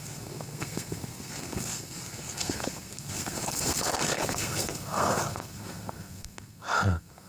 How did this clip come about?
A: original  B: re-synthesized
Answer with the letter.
B